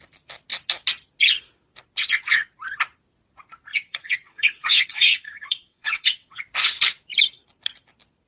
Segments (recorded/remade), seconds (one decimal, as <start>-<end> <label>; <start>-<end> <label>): 0.0-3.7 recorded; 3.7-6.4 remade; 6.4-8.3 recorded